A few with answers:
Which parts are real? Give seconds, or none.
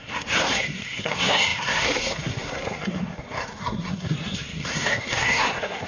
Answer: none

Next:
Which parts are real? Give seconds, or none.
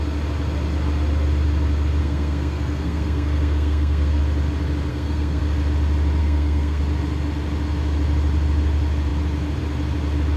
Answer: 0.0-2.0; 4.2-4.9; 5.4-6.2; 6.8-10.4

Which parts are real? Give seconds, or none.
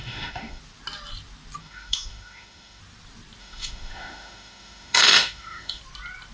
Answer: 0.6-1.6; 2.8-3.4; 5.8-6.3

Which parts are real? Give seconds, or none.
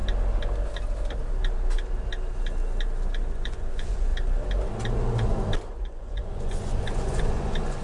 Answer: 0.0-3.3; 4.1-5.7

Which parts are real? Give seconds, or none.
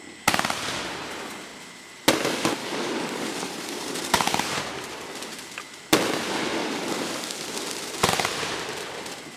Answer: 0.0-2.6; 4.6-6.6; 7.5-9.4